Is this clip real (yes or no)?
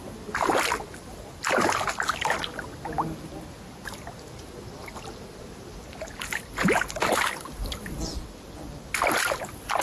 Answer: yes